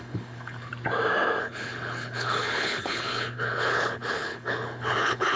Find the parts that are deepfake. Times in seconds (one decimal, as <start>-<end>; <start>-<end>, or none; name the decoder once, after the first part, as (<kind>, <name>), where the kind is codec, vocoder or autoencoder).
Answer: 0.0-0.7 (codec, HILCodec); 1.4-5.4